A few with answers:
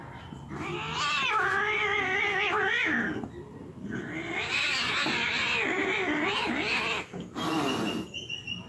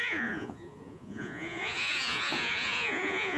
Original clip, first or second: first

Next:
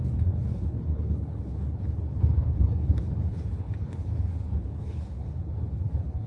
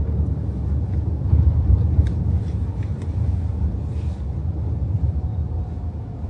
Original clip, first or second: second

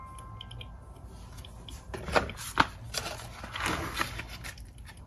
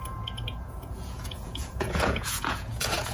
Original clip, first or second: first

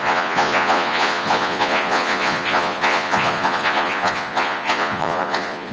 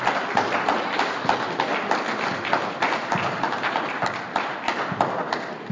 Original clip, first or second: second